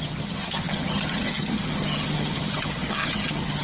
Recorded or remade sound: remade